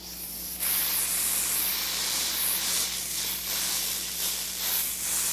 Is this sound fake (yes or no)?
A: no